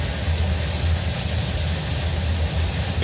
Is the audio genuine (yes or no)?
yes